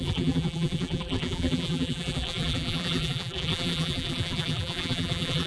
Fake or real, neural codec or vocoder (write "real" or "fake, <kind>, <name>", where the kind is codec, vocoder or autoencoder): fake, vocoder, BigVGAN v2